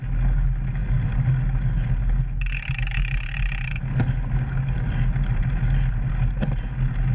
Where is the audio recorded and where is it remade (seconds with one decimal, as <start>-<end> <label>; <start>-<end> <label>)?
0.0-7.1 recorded